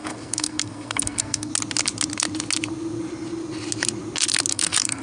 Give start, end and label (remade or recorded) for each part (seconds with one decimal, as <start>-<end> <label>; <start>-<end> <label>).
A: 0.0-1.5 remade; 1.5-4.5 recorded; 4.5-5.0 remade